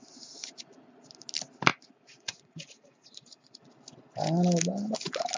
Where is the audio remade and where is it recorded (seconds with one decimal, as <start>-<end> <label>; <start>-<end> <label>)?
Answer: 0.0-1.7 recorded; 1.7-3.6 remade; 3.6-5.4 recorded